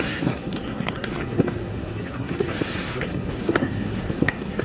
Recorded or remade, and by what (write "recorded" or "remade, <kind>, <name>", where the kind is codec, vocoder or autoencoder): remade, codec, SNAC